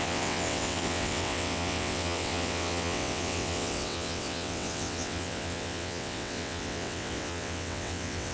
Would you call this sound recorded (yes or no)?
no